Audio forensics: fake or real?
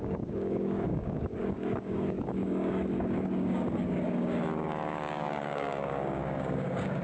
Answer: fake